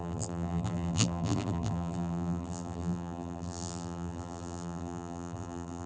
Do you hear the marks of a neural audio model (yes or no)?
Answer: yes